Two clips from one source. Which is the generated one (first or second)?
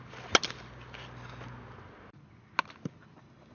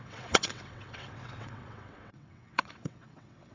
second